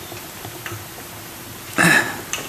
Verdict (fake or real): fake